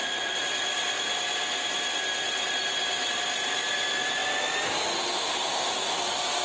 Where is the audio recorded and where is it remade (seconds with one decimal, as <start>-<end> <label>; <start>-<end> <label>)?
0.0-0.5 remade; 0.5-6.4 recorded